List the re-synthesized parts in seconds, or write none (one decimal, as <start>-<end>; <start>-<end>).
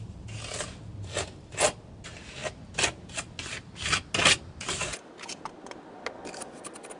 none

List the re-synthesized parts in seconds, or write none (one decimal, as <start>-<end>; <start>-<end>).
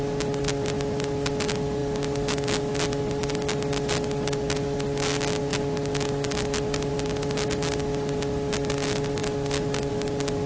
none